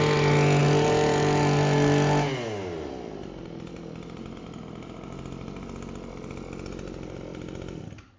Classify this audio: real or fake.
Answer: real